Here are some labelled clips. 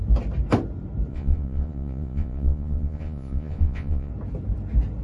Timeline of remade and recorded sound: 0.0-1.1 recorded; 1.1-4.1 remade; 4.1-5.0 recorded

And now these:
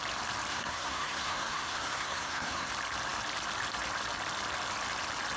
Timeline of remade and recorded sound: 0.0-0.5 recorded; 0.5-2.7 remade; 2.7-5.4 recorded